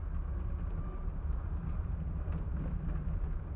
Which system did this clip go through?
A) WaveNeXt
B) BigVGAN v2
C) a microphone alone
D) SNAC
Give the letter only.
C